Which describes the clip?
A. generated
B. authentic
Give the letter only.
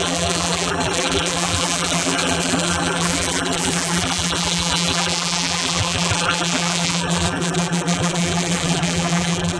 A